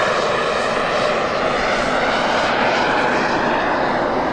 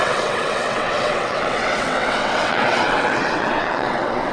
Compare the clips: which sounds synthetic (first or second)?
second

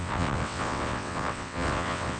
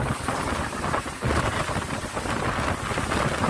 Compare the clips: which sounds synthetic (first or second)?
first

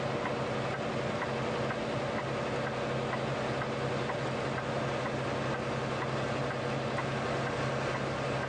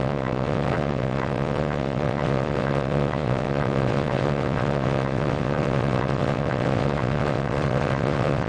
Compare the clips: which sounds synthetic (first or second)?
second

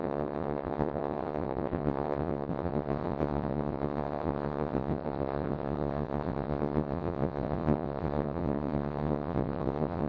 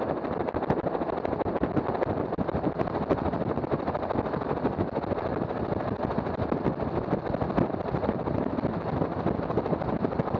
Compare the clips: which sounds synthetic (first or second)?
first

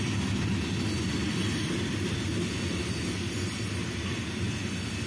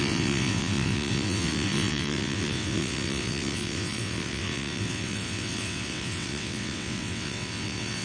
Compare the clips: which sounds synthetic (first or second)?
second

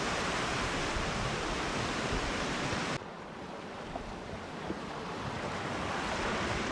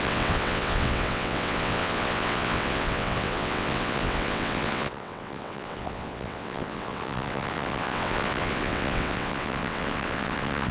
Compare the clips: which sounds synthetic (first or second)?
second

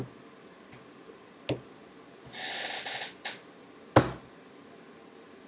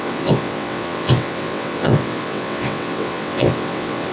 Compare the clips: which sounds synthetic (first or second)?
second